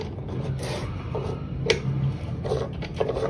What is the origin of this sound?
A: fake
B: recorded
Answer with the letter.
B